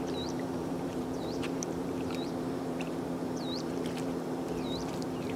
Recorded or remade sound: remade